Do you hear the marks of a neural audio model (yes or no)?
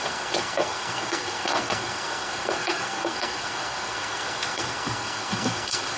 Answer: yes